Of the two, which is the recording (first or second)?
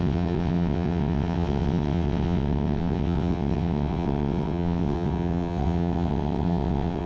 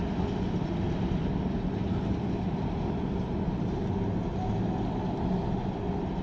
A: second